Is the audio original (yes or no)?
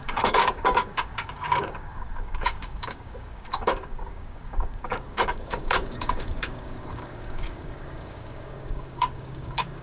no